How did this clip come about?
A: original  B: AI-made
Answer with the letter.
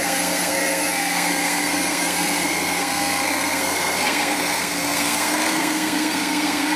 B